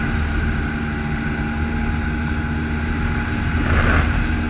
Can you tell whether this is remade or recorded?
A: recorded